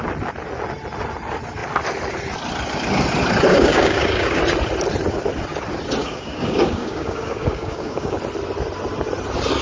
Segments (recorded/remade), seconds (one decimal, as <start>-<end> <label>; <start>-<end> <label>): 0.0-3.5 recorded; 3.5-4.4 remade; 4.4-6.0 recorded; 6.0-8.2 remade; 8.2-9.6 recorded